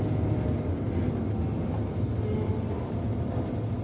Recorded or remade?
recorded